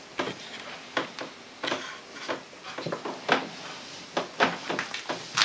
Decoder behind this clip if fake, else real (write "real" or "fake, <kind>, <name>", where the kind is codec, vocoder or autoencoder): real